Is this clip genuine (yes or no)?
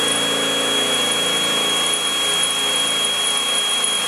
yes